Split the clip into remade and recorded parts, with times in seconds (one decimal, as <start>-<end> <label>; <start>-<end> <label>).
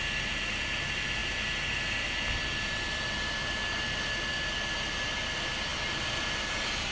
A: 0.0-6.9 recorded